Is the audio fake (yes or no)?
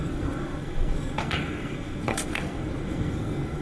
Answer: yes